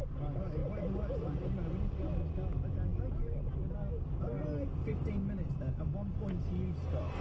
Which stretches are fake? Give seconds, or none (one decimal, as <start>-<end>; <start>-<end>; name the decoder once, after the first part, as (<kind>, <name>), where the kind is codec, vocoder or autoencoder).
none